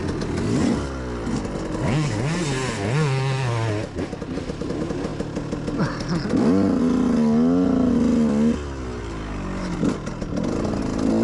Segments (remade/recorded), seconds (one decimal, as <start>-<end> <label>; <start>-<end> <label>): 0.0-11.2 recorded